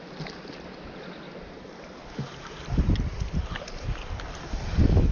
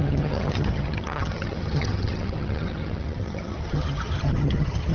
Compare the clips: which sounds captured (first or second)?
first